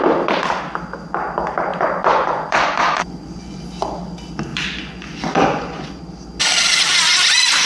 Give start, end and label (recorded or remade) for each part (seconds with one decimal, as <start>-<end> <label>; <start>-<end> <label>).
0.0-1.7 recorded; 1.7-3.6 remade; 3.6-4.5 recorded; 4.5-6.0 remade; 6.0-7.6 recorded

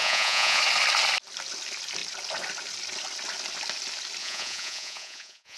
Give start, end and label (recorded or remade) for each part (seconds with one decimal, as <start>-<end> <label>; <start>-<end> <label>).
0.0-0.6 remade; 0.6-4.2 recorded; 4.2-5.6 remade

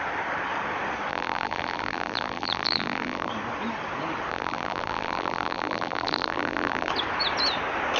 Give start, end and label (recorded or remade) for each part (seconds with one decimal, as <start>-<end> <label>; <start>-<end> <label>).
0.0-1.1 recorded; 1.1-3.3 remade; 3.3-4.3 recorded; 4.3-6.9 remade; 6.9-8.0 recorded

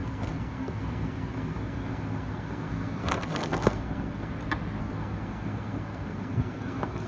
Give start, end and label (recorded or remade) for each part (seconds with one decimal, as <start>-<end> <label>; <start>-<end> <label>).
0.0-4.3 remade; 4.3-4.8 recorded; 4.8-7.1 remade

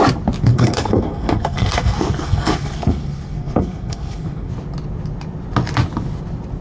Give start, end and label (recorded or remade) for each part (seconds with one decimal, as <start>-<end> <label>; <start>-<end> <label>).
0.0-0.5 recorded; 0.5-4.5 remade; 4.5-6.6 recorded

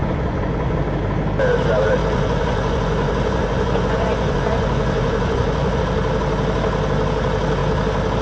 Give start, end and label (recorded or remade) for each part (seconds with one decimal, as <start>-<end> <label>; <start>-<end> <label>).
0.0-0.8 remade; 0.8-2.0 recorded; 2.0-5.8 remade; 5.8-8.2 recorded

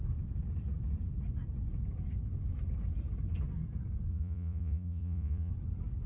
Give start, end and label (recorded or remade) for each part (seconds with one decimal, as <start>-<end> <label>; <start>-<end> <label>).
0.0-4.1 recorded; 4.1-5.5 remade; 5.5-6.1 recorded

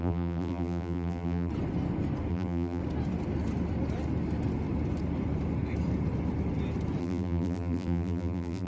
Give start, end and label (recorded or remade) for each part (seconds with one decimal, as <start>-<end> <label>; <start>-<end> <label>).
0.0-1.5 remade; 1.5-2.3 recorded; 2.3-2.8 remade; 2.8-7.0 recorded; 7.0-8.7 remade